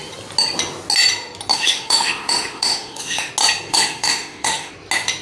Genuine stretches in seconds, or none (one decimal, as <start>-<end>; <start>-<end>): 0.0-1.5; 3.3-3.7; 4.7-5.2

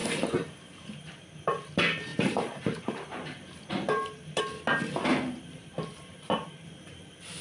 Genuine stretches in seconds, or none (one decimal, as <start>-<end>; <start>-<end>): 1.2-2.1; 4.4-5.1; 6.7-7.4

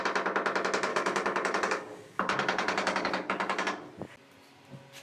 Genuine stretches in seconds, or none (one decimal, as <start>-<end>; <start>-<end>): 0.0-0.9; 3.9-5.0

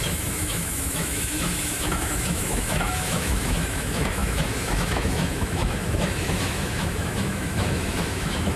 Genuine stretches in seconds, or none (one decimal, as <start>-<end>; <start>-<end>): none

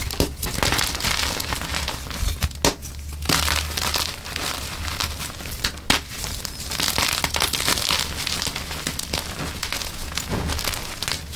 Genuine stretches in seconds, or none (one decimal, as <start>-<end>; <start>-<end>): 0.0-9.8; 10.5-11.4

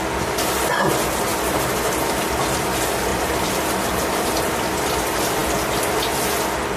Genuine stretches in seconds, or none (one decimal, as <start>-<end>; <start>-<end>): 0.0-1.3; 1.9-3.1; 4.6-6.8